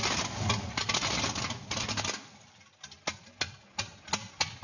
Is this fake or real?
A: real